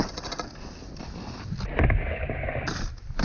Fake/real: real